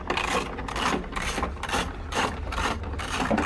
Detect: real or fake real